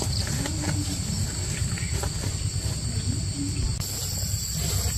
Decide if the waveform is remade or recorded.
recorded